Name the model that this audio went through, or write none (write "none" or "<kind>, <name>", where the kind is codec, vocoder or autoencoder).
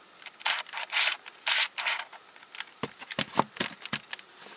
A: none